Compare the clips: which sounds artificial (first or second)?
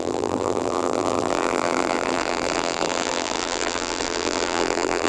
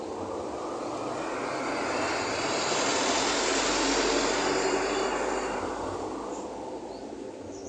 first